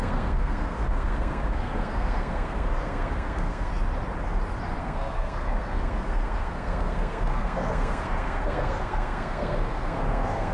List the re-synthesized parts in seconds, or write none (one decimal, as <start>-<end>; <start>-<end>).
0.0-3.7; 4.8-10.5